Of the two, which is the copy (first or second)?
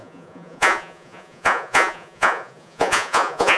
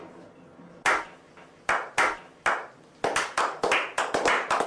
first